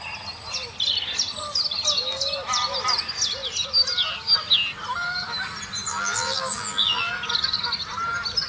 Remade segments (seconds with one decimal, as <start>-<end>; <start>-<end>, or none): 5.9-7.1